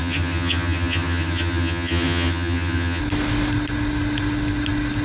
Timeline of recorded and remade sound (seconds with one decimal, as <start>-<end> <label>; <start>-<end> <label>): 0.0-3.0 remade; 3.0-5.0 recorded